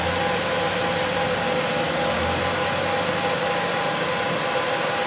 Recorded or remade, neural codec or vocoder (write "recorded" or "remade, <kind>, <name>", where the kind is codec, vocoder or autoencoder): recorded